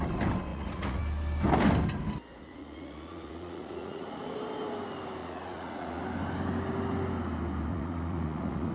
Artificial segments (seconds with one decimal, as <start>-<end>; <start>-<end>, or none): 0.5-1.0; 2.3-4.4; 5.2-6.0; 7.7-8.7